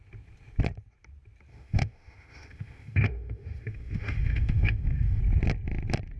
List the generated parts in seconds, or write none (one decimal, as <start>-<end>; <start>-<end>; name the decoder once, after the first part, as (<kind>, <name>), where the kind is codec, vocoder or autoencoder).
1.5-5.2 (autoencoder, DAC-VAE)